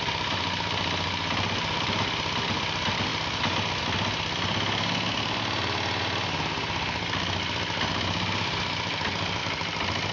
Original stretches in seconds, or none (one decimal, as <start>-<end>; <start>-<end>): 3.1-3.8